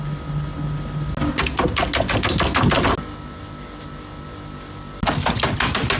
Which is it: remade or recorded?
recorded